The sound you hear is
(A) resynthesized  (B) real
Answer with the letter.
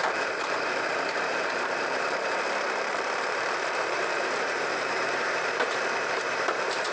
A